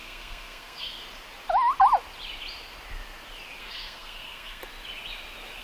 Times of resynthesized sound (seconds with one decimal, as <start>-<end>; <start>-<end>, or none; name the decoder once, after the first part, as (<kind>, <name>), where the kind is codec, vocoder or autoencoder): 0.0-1.0 (codec, SNAC); 3.6-4.6